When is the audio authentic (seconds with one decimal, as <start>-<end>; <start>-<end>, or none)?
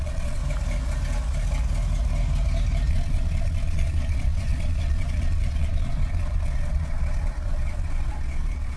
0.4-2.9